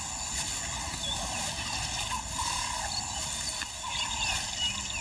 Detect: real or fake real